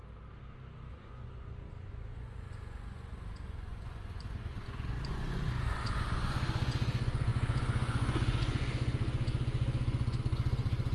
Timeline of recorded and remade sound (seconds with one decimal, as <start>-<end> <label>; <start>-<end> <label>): 0.0-0.9 recorded; 0.9-10.9 remade